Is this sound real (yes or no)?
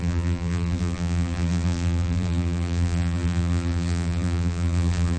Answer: no